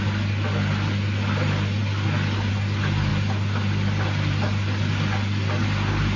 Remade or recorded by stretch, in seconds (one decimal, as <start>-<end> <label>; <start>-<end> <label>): 0.0-6.2 recorded